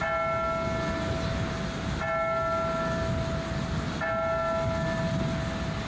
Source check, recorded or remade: recorded